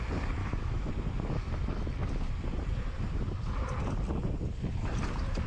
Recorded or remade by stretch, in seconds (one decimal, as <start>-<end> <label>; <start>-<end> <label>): 0.0-0.4 recorded; 0.4-0.9 remade; 0.9-5.5 recorded